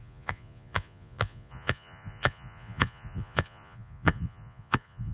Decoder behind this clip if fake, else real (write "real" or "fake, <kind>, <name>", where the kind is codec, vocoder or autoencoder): fake, vocoder, Vocos